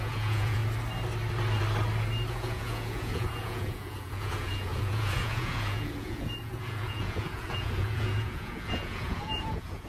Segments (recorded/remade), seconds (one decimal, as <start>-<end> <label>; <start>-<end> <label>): 0.0-0.6 remade; 0.6-2.3 recorded; 2.3-9.9 remade